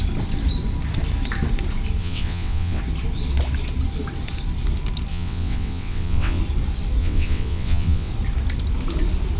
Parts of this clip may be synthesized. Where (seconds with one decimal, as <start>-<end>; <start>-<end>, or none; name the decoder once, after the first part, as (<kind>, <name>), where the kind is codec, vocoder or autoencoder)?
2.0-2.8 (vocoder, WaveNeXt); 5.1-6.4; 7.0-8.1